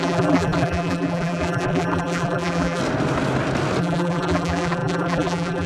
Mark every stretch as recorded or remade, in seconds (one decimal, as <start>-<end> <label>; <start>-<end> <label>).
0.0-2.8 remade; 2.8-3.8 recorded; 3.8-5.7 remade

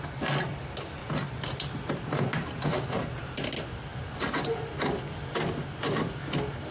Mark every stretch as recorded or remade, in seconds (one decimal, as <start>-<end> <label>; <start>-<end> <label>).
0.0-1.0 recorded; 1.0-2.8 remade; 2.8-6.7 recorded